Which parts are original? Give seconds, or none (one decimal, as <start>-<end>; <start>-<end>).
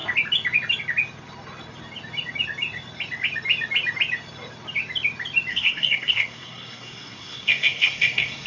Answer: 0.0-5.5